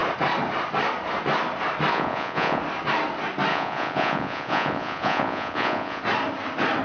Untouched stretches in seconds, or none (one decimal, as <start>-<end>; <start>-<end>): 0.0-1.9; 2.6-3.5; 6.0-6.8